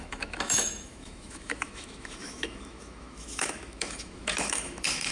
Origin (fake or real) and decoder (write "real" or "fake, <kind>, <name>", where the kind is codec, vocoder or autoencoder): fake, autoencoder, DAC-VAE